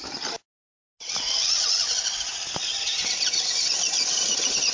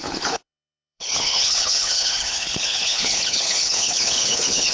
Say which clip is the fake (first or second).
second